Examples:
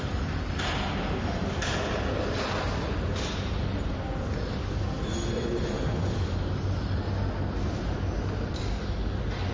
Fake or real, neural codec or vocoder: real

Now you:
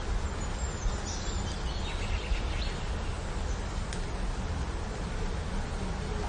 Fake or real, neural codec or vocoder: real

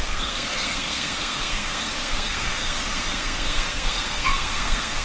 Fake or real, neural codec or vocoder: fake, codec, SNAC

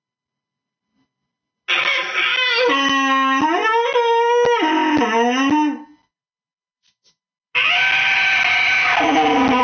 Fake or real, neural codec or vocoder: real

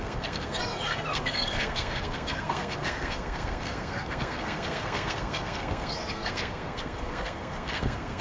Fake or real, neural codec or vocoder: fake, codec, SNAC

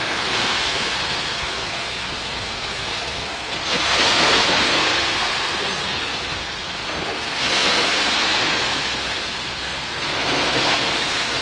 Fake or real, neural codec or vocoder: fake, codec, SNAC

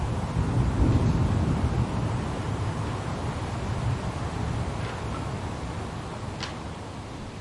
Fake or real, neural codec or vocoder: real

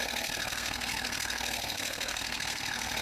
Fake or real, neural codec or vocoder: fake, codec, SNAC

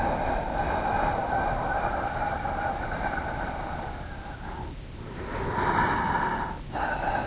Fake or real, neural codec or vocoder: real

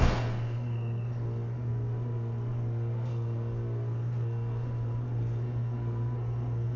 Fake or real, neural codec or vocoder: fake, codec, SNAC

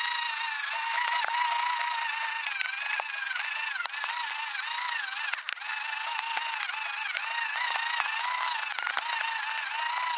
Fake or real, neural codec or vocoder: real